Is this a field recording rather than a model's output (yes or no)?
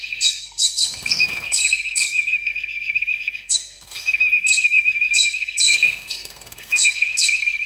no